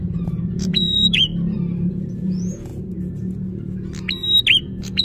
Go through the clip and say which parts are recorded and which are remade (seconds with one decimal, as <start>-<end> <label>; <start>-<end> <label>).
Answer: 0.0-1.3 remade; 1.3-1.9 recorded; 1.9-2.7 remade; 2.7-4.6 recorded; 4.6-5.0 remade